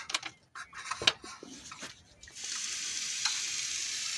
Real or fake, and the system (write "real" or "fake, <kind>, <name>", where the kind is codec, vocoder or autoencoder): real